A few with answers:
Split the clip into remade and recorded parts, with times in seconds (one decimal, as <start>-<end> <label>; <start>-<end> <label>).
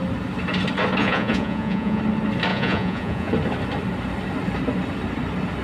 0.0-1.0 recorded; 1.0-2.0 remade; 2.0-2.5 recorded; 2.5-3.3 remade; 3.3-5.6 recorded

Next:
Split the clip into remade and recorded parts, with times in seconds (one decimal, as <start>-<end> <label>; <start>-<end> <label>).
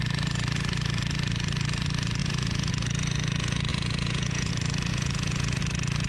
0.0-2.2 recorded; 2.2-2.7 remade; 2.7-3.7 recorded; 3.7-4.5 remade; 4.5-4.9 recorded; 4.9-5.6 remade; 5.6-6.1 recorded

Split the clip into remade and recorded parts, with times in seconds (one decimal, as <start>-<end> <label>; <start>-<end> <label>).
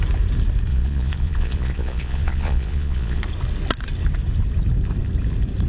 0.0-0.7 recorded; 0.7-3.2 remade; 3.2-5.7 recorded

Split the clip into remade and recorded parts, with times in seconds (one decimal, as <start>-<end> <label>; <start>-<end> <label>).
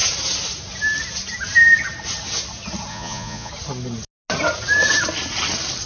0.0-2.9 recorded; 2.9-3.5 remade; 3.5-5.9 recorded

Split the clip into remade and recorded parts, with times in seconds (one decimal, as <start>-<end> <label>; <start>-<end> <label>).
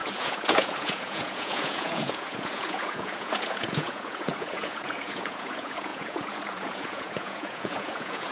0.0-8.3 remade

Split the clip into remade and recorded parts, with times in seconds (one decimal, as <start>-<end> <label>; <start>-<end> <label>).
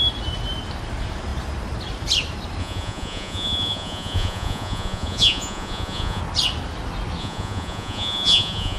0.0-2.6 recorded; 2.6-6.2 remade; 6.2-7.2 recorded; 7.2-8.8 remade